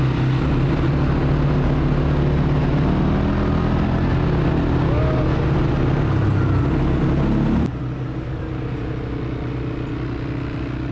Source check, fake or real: real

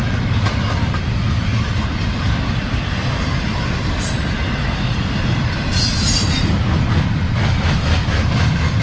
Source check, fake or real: fake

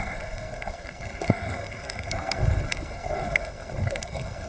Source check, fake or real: fake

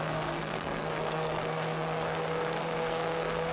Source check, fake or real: fake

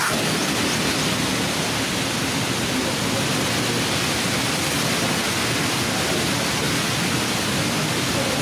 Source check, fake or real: real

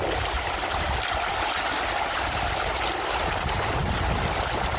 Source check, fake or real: real